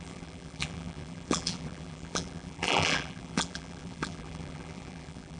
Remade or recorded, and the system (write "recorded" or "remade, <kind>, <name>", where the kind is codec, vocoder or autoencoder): remade, vocoder, BigVGAN v2